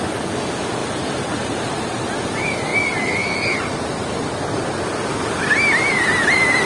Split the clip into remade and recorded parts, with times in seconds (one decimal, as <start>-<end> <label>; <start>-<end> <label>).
0.0-0.8 recorded; 0.8-2.1 remade; 2.1-6.7 recorded

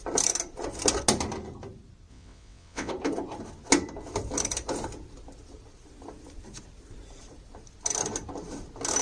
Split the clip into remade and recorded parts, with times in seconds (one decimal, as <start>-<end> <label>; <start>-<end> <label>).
0.0-2.1 recorded; 2.1-2.9 remade; 2.9-9.0 recorded

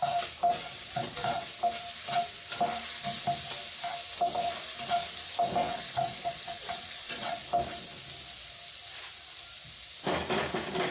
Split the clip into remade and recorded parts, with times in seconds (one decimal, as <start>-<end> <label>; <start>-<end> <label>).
0.0-0.5 recorded; 0.5-1.5 remade; 1.5-5.6 recorded; 5.6-7.4 remade; 7.4-10.9 recorded

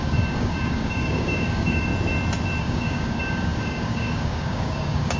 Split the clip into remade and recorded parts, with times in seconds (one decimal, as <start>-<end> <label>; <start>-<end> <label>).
0.0-1.9 remade; 1.9-2.6 recorded; 2.6-5.2 remade

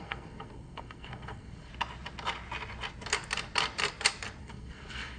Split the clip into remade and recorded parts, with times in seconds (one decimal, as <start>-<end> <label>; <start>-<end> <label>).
0.0-1.7 remade; 1.7-4.4 recorded; 4.4-5.2 remade